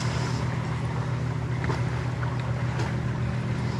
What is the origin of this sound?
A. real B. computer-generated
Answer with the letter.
A